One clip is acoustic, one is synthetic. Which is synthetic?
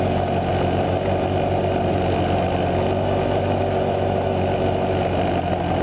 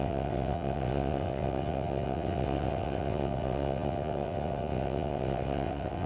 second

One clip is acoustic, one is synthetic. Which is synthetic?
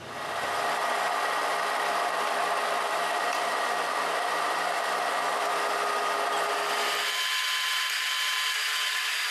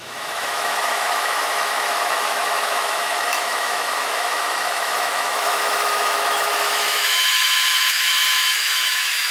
second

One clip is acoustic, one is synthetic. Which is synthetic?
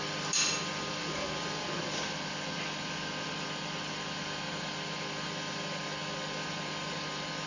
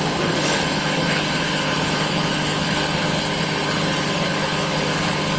second